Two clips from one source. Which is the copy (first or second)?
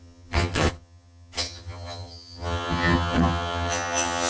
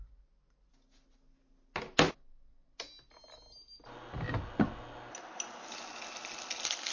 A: first